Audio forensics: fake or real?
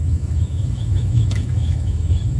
fake